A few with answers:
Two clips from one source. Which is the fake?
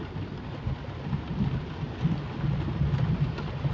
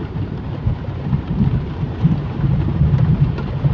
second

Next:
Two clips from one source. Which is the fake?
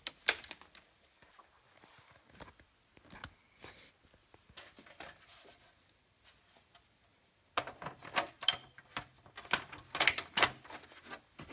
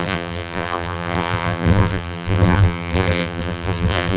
second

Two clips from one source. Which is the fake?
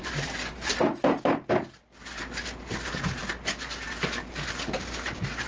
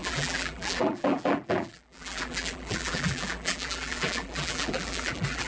second